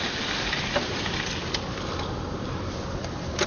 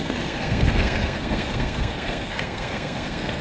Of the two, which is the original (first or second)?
first